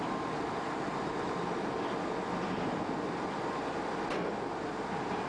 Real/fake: real